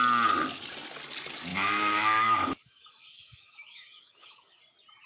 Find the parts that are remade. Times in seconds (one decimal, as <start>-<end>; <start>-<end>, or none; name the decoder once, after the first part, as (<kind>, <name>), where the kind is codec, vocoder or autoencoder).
1.5-4.6 (autoencoder, DAC-VAE)